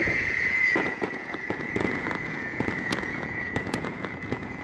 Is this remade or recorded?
remade